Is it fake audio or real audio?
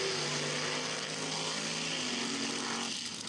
real